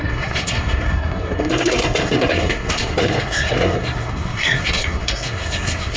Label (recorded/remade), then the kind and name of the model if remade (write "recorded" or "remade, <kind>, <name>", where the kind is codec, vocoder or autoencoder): remade, codec, SNAC